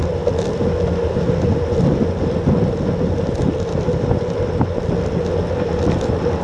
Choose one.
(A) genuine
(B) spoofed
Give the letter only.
A